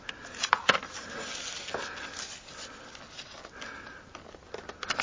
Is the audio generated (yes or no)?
no